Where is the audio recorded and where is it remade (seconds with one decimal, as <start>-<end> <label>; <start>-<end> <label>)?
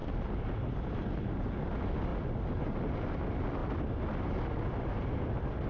0.0-5.7 recorded